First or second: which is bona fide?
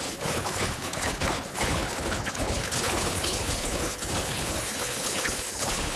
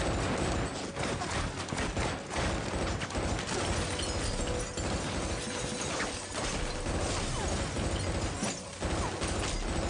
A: second